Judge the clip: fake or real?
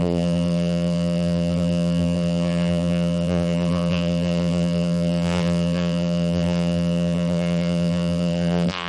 fake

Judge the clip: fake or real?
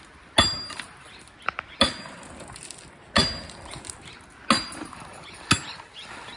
real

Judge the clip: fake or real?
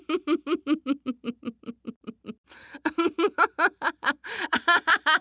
fake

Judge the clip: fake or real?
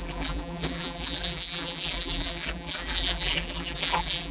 fake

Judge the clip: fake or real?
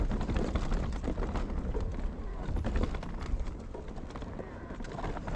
real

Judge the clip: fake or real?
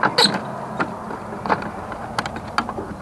real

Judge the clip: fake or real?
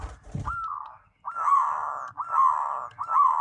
real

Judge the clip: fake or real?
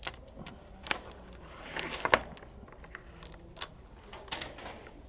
real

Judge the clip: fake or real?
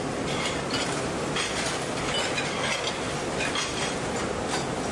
real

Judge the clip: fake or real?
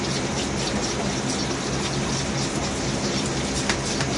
real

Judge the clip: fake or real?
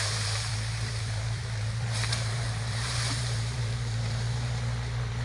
fake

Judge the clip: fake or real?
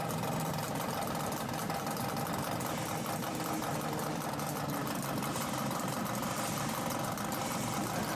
real